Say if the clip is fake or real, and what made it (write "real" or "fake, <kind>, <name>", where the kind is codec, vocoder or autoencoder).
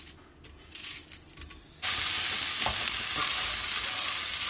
real